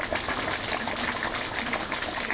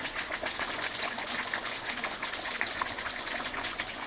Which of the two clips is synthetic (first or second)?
second